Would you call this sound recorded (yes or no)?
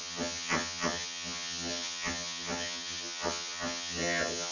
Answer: no